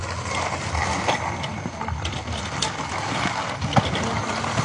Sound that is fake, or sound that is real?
real